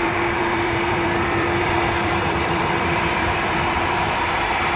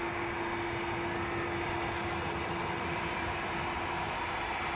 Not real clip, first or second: first